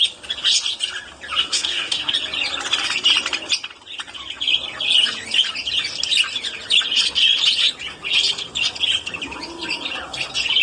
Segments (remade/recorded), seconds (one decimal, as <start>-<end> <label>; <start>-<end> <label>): 0.0-1.4 recorded; 1.4-2.1 remade; 2.1-10.6 recorded